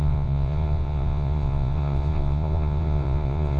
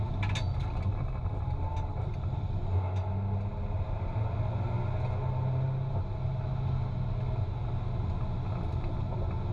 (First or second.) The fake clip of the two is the first